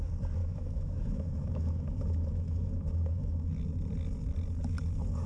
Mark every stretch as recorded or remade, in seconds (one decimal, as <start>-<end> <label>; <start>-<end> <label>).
0.0-0.4 recorded; 0.4-3.5 remade; 3.5-5.3 recorded